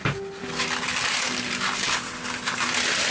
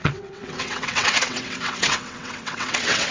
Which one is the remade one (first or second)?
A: second